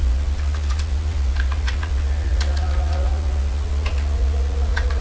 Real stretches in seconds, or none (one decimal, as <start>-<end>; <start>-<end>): none